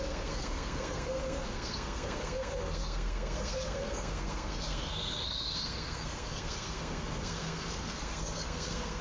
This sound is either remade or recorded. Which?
remade